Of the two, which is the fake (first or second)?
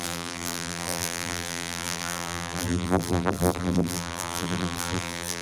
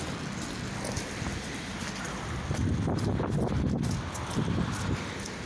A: first